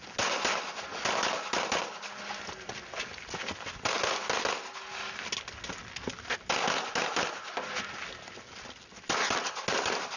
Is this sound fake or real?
real